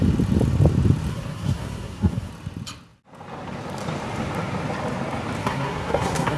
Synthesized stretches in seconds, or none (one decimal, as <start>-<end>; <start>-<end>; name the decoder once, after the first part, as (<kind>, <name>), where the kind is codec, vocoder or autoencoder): 1.1-2.3 (codec, SNAC); 5.4-6.4